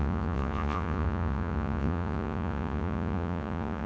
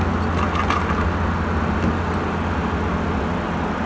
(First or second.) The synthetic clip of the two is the first